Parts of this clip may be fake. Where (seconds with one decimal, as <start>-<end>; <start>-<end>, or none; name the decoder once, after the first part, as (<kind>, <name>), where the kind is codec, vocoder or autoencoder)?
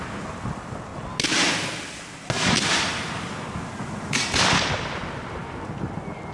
none